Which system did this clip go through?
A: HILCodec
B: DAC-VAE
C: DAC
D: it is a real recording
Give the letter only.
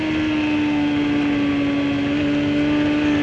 D